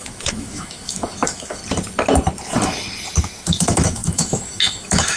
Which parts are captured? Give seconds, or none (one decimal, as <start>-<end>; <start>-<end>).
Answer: 1.6-3.2